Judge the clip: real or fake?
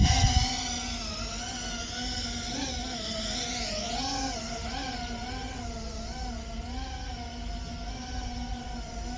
real